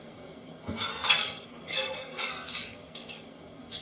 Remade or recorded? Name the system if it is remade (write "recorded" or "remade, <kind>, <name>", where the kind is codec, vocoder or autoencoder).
remade, codec, SNAC